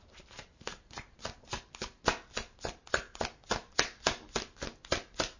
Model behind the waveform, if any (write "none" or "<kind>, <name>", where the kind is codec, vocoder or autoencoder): none